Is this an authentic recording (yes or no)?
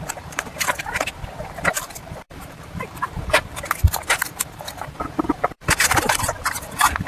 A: no